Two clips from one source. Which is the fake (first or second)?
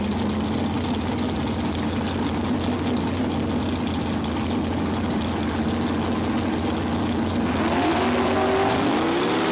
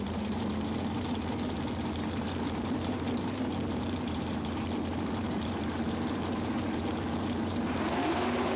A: second